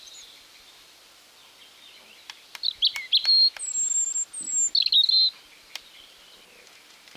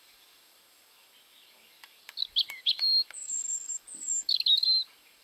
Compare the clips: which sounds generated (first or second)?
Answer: second